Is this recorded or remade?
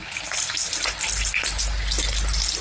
recorded